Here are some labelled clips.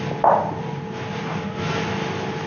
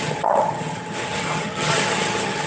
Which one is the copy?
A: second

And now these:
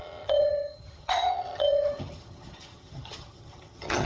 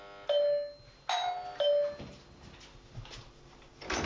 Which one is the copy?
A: first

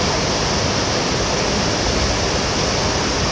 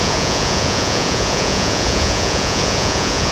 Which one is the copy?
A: second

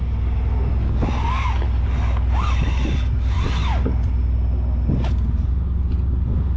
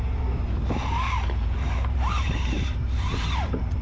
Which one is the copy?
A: second